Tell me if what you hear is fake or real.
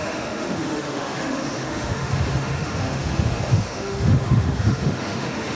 fake